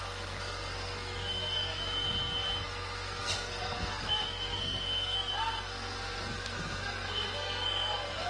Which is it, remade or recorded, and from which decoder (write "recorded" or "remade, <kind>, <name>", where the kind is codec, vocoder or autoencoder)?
remade, codec, SNAC